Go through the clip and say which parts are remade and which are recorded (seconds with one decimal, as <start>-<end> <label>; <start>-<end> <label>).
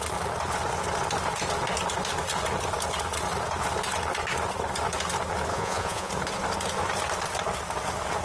0.0-5.5 recorded; 5.5-6.1 remade; 6.1-8.2 recorded